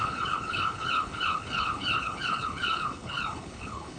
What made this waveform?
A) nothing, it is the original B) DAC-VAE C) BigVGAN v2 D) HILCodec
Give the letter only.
D